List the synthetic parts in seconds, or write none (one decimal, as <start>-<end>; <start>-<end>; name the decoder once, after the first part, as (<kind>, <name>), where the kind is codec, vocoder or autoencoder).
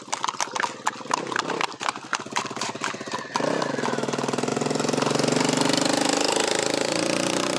0.0-4.5 (vocoder, BigVGAN v2); 6.5-7.6